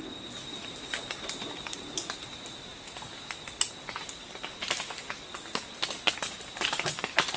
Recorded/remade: recorded